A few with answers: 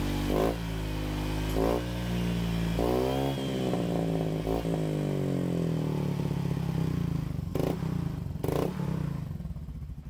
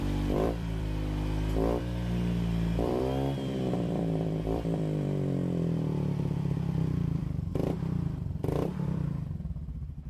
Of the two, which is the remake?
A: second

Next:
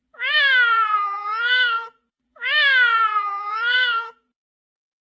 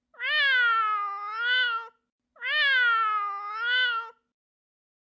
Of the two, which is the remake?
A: first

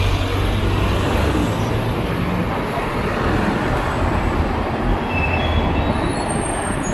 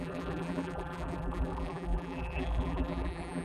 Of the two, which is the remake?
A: second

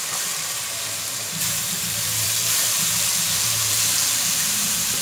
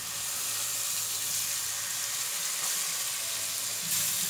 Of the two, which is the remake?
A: first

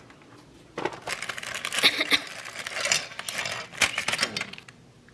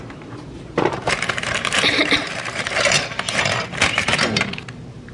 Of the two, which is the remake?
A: second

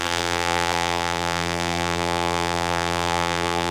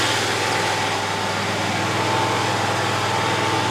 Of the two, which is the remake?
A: first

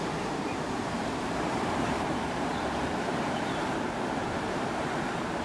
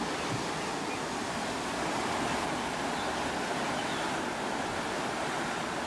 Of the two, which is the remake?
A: first